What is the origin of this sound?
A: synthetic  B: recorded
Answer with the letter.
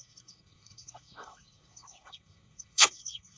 A